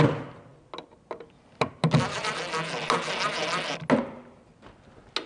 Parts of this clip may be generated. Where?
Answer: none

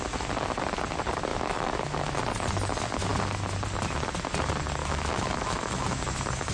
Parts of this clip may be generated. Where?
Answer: 1.3-2.2 (autoencoder, DAC-VAE); 4.8-6.0

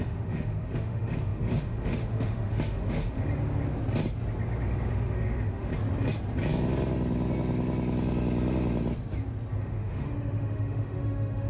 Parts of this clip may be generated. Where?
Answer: 0.0-3.2 (autoencoder, DAC-VAE); 4.9-5.7; 9.6-11.5